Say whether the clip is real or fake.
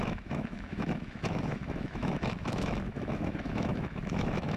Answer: fake